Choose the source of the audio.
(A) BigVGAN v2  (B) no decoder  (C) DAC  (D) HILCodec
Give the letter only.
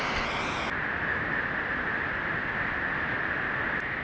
B